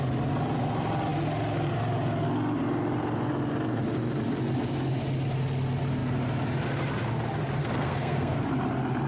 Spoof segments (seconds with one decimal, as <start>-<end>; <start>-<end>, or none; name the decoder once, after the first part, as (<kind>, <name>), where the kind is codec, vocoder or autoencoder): 7.6-8.4 (codec, SNAC)